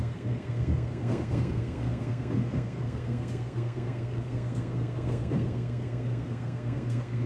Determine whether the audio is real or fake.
fake